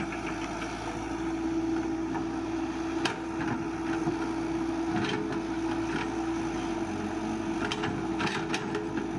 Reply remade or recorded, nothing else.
recorded